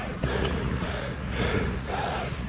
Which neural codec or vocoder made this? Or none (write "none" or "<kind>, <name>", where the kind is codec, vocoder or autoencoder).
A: vocoder, Vocos